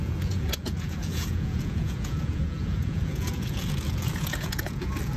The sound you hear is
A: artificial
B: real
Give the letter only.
A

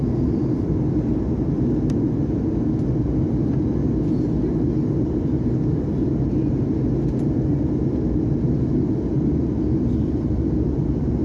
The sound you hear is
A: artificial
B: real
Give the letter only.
B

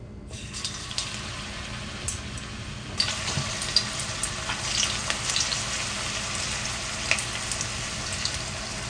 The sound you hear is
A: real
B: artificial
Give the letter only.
A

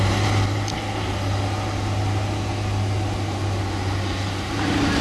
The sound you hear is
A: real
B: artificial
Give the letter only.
A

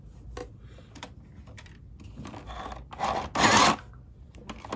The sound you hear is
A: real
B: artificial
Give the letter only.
A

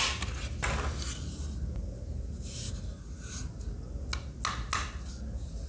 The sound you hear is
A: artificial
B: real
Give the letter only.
B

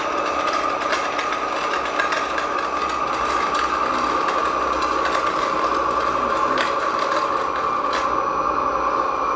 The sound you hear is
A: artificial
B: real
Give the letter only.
B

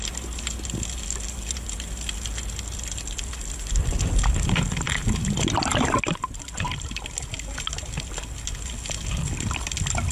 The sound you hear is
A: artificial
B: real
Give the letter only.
B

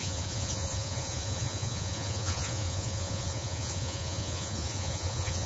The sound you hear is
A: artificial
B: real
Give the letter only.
A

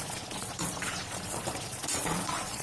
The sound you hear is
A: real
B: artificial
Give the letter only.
B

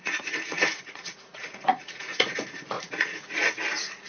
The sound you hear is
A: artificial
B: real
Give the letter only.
A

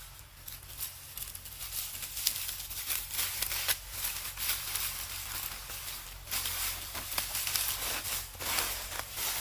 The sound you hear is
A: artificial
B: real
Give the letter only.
B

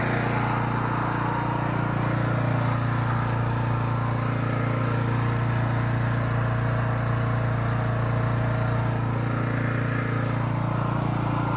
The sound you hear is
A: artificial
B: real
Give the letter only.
B